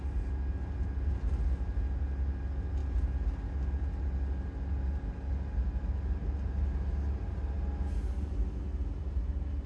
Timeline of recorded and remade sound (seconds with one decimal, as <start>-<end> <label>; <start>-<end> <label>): 0.0-9.7 recorded